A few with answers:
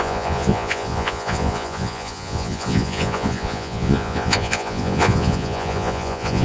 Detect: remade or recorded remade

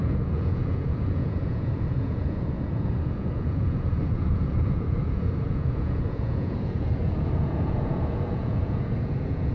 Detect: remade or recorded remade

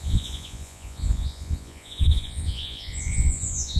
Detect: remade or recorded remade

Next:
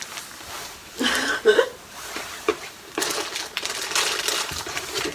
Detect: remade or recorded recorded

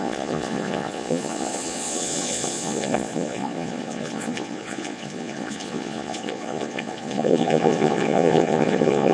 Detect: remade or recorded remade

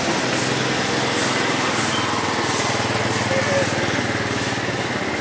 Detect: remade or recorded recorded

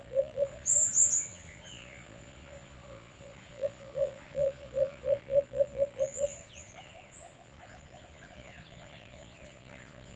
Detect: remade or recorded remade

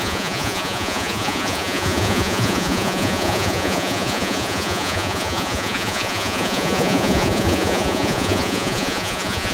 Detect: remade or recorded remade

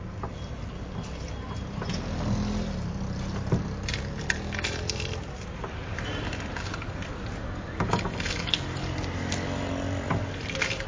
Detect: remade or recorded recorded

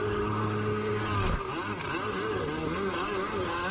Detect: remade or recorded recorded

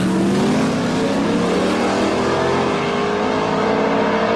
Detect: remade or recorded recorded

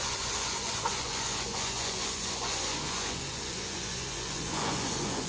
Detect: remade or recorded remade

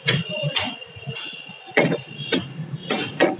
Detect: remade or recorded remade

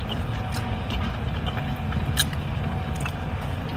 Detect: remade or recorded recorded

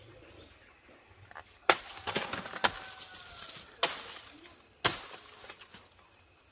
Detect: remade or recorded recorded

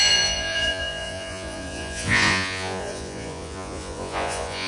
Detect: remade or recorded remade